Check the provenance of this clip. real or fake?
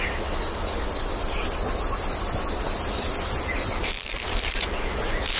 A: real